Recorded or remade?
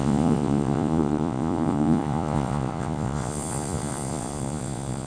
remade